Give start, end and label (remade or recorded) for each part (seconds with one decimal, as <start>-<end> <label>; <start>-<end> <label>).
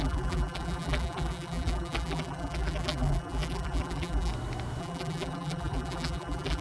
0.0-4.3 remade; 4.3-4.8 recorded; 4.8-6.6 remade